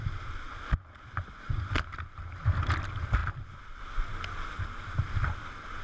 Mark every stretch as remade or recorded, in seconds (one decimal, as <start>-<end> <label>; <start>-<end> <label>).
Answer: 0.0-5.8 recorded